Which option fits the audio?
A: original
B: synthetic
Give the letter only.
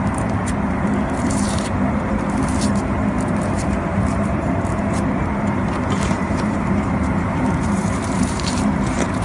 B